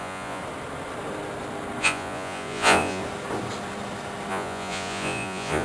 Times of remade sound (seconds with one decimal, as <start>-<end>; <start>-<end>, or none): 0.0-0.4; 1.8-3.0; 4.3-5.6